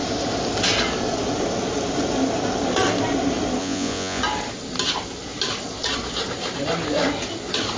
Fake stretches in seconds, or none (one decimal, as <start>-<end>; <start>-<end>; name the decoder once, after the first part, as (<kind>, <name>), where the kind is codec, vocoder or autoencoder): 3.6-4.2 (vocoder, Vocos)